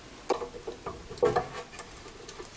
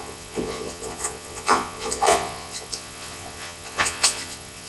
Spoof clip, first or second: second